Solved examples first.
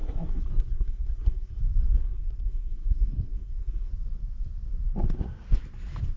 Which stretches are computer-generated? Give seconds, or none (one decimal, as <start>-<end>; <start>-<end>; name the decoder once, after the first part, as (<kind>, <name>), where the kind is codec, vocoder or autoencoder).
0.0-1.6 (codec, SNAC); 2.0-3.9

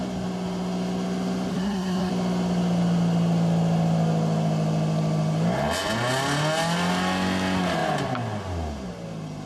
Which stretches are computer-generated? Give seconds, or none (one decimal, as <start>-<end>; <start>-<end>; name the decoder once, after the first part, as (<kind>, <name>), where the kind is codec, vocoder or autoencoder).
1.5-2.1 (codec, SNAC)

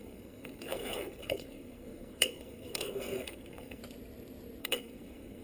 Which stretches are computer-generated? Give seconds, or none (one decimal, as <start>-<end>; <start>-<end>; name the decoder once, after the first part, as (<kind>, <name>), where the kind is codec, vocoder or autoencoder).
0.0-3.8 (codec, SNAC); 4.6-5.4